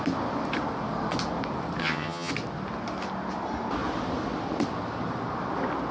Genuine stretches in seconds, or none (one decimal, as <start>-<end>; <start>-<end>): 0.0-1.8; 2.3-5.9